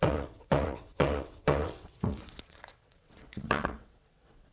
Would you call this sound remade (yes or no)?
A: yes